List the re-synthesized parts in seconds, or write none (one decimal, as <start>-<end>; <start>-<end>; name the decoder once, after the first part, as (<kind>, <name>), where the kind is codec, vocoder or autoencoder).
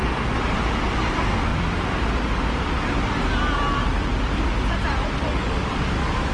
none